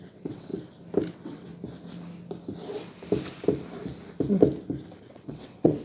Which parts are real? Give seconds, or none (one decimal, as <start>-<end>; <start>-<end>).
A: 0.5-1.1; 1.5-5.0